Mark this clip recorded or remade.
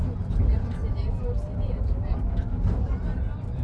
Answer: remade